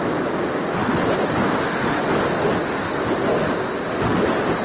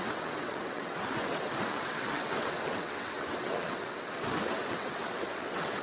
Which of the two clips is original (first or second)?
first